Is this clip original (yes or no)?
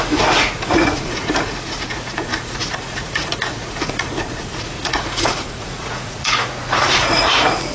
no